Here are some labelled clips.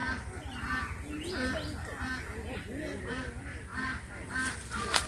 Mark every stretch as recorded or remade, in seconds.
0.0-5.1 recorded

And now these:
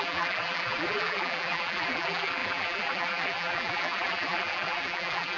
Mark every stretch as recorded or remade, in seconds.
0.0-5.4 remade

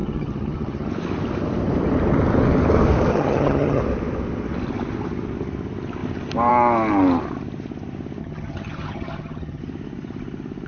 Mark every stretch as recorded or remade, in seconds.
0.0-0.9 remade; 0.9-3.1 recorded; 3.1-3.8 remade; 3.8-8.2 recorded; 8.2-9.6 remade; 9.6-10.7 recorded

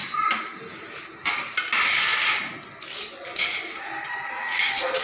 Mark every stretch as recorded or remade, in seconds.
0.0-5.0 recorded